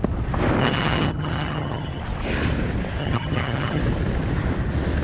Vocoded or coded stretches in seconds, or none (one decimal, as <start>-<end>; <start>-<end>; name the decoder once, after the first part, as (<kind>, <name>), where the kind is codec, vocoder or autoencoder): 0.6-2.0 (vocoder, HiFi-GAN); 3.0-3.8